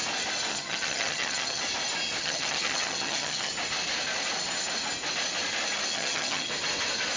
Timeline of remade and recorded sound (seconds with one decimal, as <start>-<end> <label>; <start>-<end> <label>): 0.0-0.5 recorded; 0.5-1.6 remade; 1.6-2.2 recorded; 2.2-3.5 remade; 3.5-5.9 recorded; 5.9-6.5 remade; 6.5-7.2 recorded